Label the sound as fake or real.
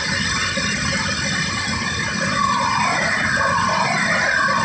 real